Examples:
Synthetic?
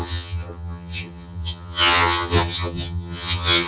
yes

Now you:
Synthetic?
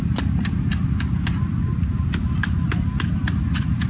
no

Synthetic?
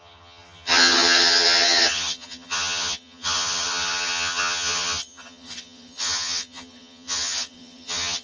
yes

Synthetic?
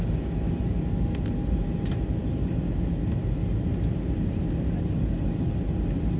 no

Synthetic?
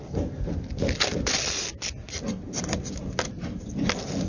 no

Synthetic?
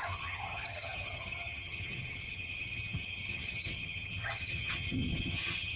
yes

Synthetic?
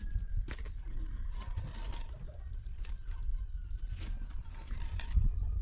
no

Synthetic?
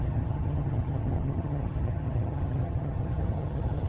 yes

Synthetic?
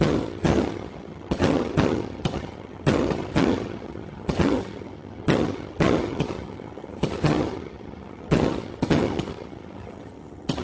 yes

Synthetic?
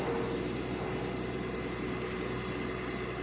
no